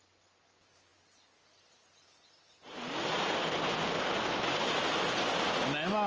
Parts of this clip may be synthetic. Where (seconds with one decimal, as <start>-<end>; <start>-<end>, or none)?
none